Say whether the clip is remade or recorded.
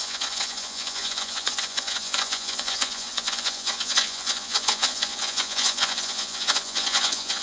remade